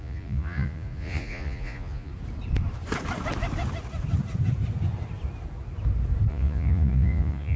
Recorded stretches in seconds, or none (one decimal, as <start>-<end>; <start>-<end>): 2.1-6.3